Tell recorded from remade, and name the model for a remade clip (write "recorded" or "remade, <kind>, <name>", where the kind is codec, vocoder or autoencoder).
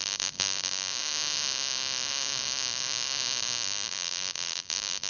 remade, codec, DAC